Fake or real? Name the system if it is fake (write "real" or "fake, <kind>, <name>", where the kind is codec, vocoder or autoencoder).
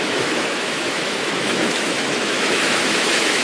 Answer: fake, autoencoder, DAC-VAE